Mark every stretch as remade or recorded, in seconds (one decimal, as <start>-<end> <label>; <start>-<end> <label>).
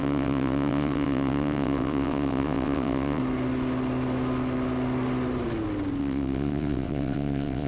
0.0-3.2 remade; 3.2-6.0 recorded; 6.0-7.7 remade